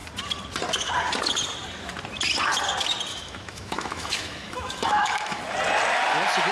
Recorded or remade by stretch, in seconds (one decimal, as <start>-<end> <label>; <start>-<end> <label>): 0.0-3.1 recorded; 3.1-5.4 remade; 5.4-6.5 recorded